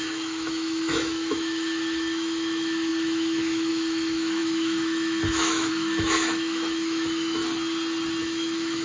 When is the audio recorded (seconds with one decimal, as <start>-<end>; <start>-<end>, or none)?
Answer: 7.4-8.2